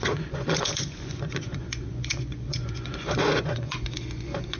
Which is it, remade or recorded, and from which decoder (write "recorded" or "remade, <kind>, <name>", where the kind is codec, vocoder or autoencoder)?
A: remade, vocoder, Vocos